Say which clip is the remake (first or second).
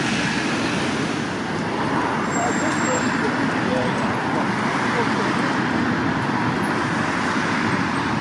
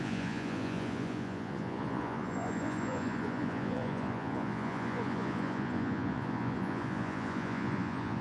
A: second